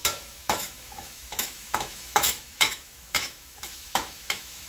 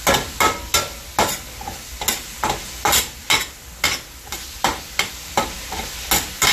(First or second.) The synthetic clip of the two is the first